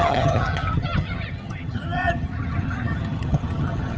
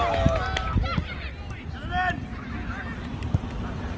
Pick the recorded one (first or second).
second